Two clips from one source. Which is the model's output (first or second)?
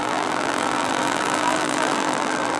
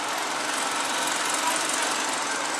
first